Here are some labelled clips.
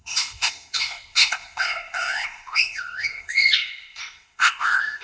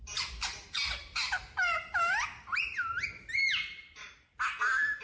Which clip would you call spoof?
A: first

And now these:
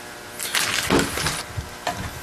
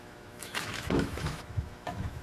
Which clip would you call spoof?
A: second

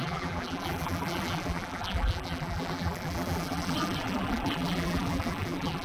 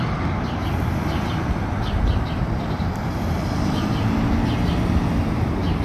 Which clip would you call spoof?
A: first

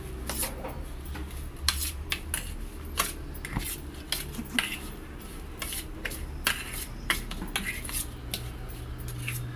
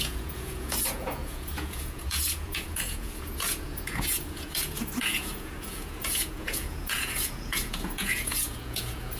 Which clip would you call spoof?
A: second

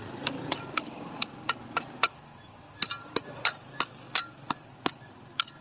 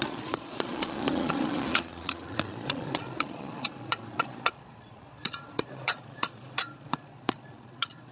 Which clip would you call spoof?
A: second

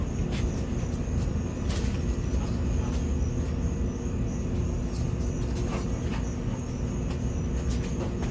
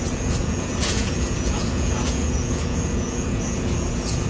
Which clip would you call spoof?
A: second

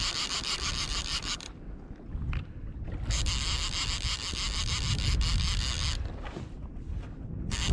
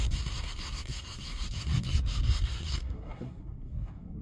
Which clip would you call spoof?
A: second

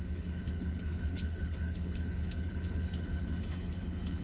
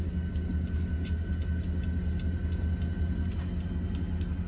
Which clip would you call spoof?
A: first